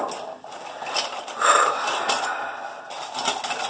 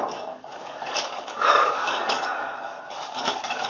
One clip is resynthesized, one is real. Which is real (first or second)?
first